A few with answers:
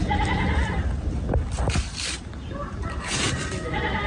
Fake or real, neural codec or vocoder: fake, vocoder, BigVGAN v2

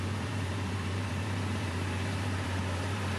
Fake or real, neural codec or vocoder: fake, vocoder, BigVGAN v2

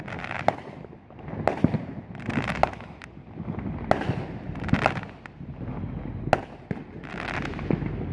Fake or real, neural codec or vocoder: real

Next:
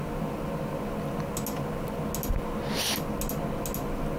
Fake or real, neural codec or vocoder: real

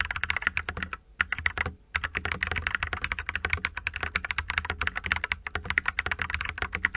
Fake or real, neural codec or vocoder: real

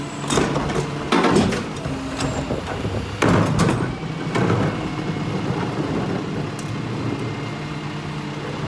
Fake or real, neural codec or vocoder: real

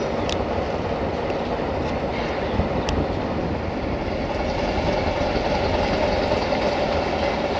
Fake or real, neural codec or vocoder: real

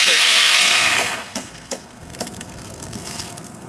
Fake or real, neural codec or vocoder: fake, codec, SNAC